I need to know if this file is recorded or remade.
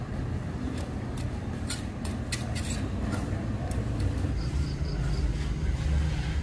recorded